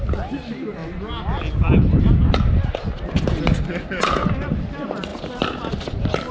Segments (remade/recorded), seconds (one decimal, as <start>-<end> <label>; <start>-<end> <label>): 0.0-6.3 recorded

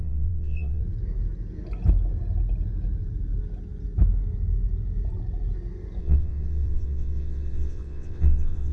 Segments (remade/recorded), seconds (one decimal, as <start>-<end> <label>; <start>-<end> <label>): 0.0-0.8 remade; 0.8-6.0 recorded; 6.0-8.7 remade

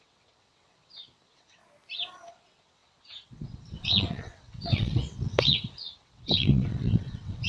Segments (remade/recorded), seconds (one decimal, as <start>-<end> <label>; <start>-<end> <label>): 0.0-1.6 remade; 1.6-2.3 recorded; 2.3-7.5 remade

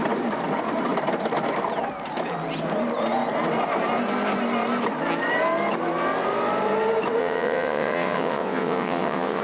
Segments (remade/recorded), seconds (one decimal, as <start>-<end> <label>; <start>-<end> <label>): 0.0-7.2 recorded; 7.2-9.4 remade

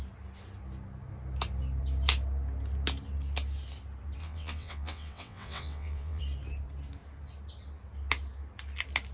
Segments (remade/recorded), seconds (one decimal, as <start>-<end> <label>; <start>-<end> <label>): 0.0-4.2 recorded; 4.2-6.2 remade; 6.2-9.1 recorded